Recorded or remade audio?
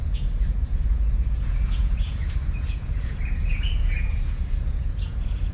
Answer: remade